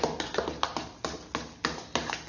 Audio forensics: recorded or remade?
recorded